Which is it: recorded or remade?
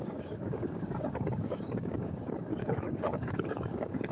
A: remade